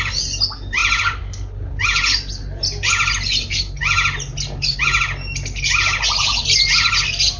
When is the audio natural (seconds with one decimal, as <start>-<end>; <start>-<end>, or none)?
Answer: 0.0-7.4